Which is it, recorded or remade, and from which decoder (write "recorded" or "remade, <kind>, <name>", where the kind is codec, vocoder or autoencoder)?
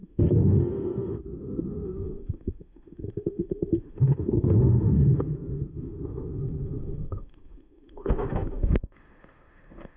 remade, autoencoder, DAC-VAE